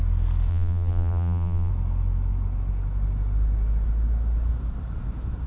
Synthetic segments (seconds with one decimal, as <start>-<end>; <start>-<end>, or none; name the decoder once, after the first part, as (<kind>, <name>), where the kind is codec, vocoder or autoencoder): 0.5-1.7 (vocoder, BigVGAN v2)